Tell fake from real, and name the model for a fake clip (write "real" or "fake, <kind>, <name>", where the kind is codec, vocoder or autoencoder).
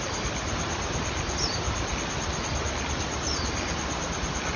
real